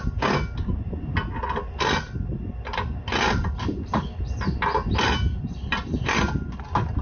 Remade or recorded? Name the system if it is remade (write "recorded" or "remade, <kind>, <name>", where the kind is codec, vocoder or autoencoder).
recorded